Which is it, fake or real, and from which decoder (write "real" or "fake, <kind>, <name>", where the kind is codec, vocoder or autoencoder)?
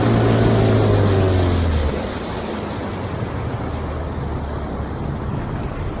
real